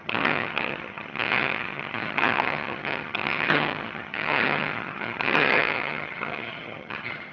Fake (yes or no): yes